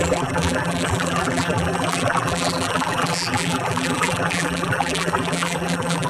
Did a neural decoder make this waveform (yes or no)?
yes